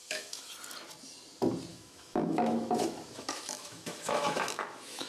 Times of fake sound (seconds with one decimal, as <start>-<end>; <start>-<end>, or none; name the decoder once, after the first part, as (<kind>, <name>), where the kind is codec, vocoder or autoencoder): 0.0-0.5 (autoencoder, DAC-VAE); 1.7-5.1